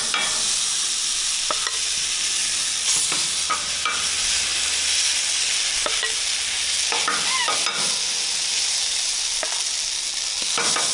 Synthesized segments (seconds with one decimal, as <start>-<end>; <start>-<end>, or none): none